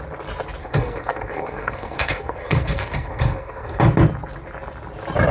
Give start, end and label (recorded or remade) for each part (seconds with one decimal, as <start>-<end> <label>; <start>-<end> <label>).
0.0-0.6 recorded; 0.6-3.8 remade; 3.8-5.3 recorded